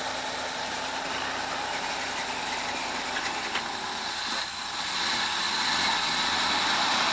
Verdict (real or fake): real